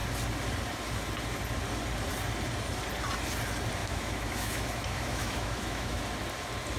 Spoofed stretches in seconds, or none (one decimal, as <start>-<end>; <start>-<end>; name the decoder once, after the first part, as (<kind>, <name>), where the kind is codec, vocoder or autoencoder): 3.8-6.0 (autoencoder, DAC-VAE)